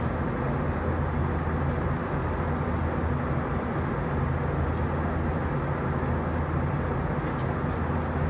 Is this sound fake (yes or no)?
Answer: no